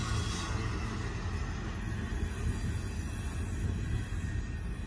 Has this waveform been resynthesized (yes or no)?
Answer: no